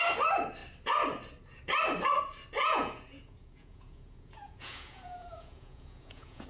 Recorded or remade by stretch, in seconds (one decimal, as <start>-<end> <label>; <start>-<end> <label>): 0.0-2.6 recorded; 2.6-6.5 remade